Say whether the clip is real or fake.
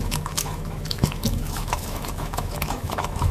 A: fake